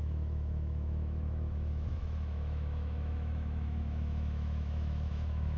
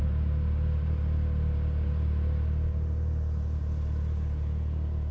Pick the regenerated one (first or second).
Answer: first